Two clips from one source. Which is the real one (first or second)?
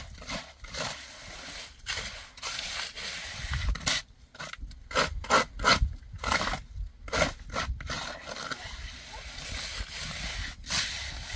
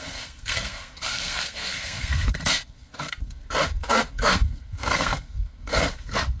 first